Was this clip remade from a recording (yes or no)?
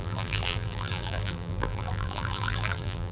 yes